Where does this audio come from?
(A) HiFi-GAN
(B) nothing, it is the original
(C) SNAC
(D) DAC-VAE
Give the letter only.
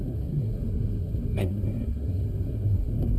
C